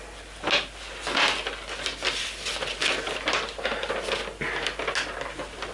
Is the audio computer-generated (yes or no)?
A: no